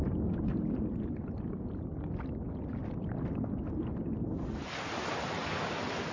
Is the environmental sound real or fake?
real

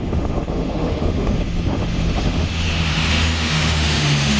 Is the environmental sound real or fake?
fake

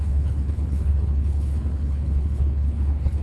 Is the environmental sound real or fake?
fake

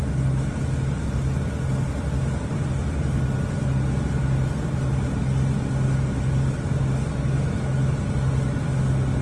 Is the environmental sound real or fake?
real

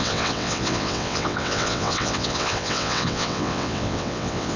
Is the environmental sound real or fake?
fake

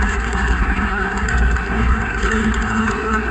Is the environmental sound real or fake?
fake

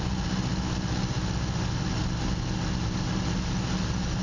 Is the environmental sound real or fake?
real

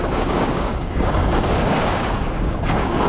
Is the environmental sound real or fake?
fake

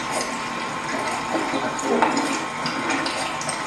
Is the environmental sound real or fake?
real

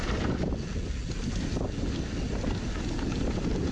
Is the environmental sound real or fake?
real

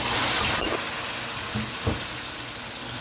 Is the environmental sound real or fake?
real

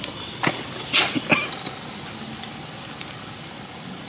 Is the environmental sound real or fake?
real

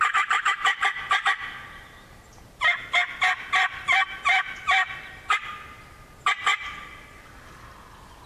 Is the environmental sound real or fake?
real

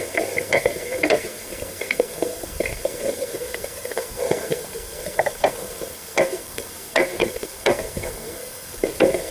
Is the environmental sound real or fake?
fake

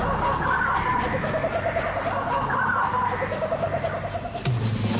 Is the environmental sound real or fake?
real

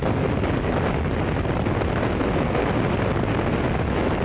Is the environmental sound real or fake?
real